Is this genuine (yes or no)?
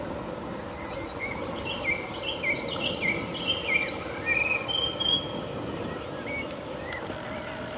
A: yes